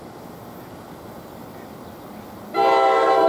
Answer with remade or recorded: recorded